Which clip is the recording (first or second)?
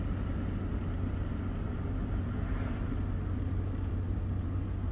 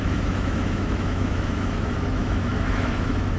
first